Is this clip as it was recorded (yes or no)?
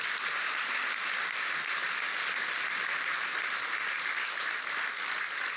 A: yes